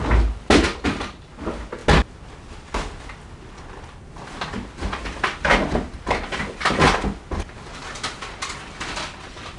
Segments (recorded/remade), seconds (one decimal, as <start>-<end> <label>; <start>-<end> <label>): 0.0-9.6 recorded